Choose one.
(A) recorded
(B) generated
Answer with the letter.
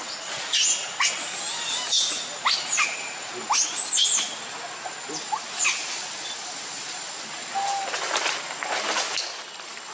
A